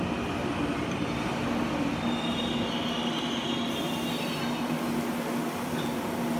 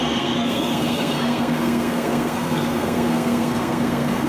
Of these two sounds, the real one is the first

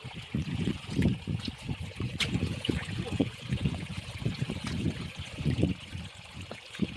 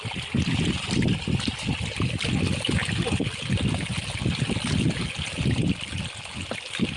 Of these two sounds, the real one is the second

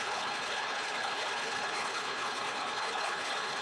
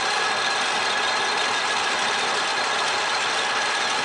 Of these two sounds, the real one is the second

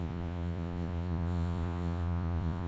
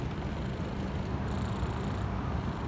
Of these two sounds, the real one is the second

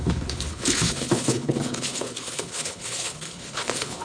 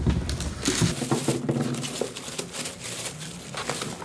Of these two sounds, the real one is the second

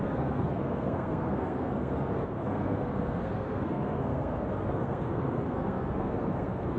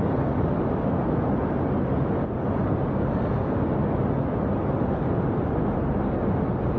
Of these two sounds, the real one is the second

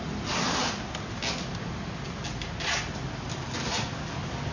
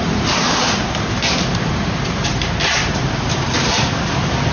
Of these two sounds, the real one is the first